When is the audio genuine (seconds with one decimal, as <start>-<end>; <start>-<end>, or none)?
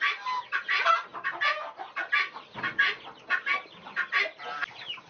0.0-5.1